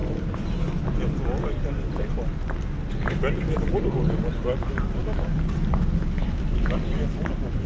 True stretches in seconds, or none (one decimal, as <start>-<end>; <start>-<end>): 0.0-7.7